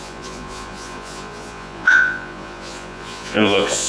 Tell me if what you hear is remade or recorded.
remade